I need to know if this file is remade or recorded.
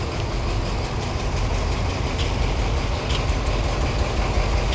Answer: recorded